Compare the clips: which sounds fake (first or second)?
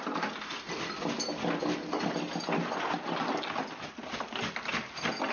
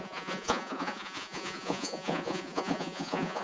second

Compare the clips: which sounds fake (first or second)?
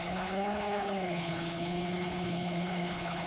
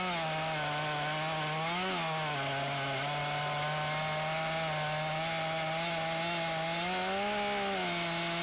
first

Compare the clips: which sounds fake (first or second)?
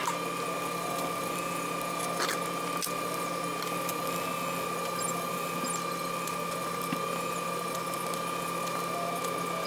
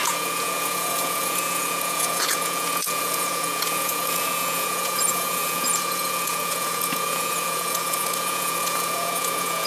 second